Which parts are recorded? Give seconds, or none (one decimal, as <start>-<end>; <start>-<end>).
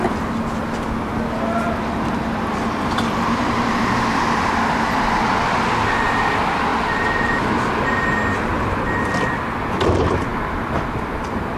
0.0-10.3